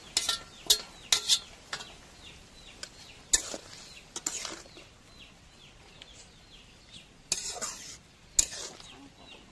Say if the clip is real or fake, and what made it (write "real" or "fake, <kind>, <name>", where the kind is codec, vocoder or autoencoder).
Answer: real